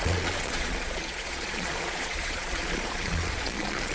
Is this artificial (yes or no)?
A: yes